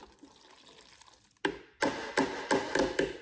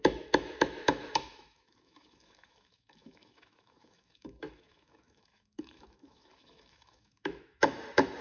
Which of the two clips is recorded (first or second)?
first